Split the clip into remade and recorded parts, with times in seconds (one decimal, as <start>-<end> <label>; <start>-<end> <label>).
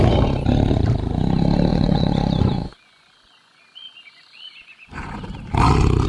0.0-1.7 recorded; 1.7-5.0 remade; 5.0-6.1 recorded